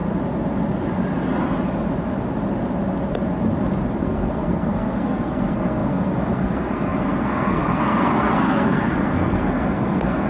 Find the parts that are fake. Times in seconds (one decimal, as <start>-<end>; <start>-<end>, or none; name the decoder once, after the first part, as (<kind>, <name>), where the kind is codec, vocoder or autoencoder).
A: 4.0-10.3 (codec, SNAC)